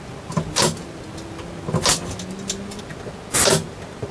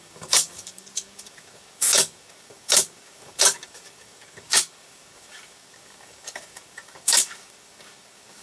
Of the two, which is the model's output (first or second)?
second